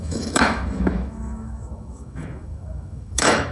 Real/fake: fake